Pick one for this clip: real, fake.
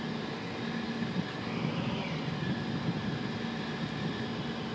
real